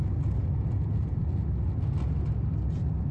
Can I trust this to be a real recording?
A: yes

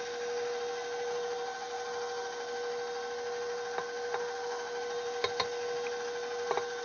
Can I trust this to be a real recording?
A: yes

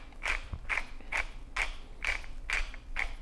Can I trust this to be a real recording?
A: yes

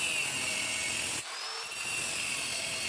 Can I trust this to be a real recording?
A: yes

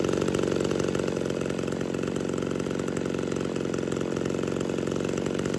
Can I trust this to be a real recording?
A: yes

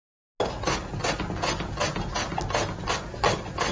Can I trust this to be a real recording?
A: yes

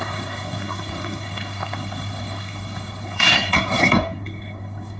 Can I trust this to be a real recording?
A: no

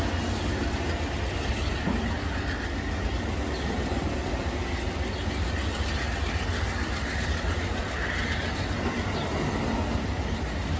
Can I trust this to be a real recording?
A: yes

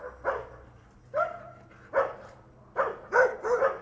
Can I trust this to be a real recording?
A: yes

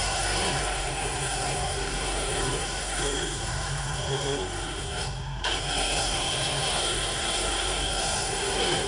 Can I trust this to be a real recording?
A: no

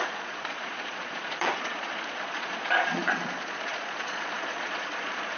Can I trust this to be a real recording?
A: no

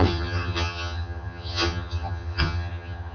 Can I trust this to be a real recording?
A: no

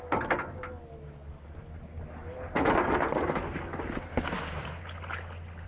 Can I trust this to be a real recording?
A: yes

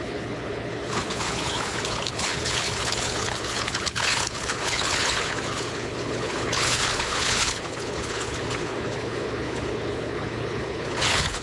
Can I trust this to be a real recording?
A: no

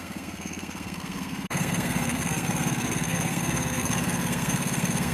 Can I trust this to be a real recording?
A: no